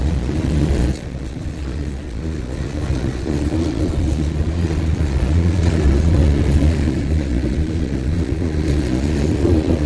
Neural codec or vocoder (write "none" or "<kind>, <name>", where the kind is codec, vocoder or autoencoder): vocoder, Vocos